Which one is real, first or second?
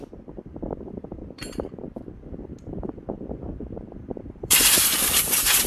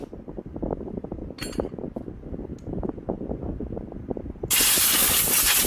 second